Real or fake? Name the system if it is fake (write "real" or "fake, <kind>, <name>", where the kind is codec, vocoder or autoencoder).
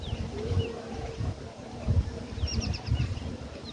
fake, vocoder, BigVGAN v2